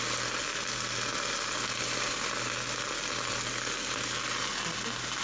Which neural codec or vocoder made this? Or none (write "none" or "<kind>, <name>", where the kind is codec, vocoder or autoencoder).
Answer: none